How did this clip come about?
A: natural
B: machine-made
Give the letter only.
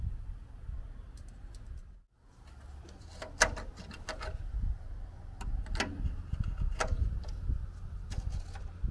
A